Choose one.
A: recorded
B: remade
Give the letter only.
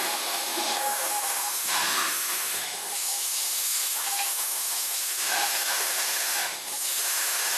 B